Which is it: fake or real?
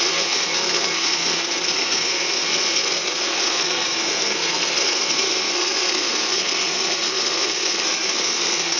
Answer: fake